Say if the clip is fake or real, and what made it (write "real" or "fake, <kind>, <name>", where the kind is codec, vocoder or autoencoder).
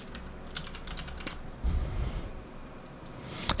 real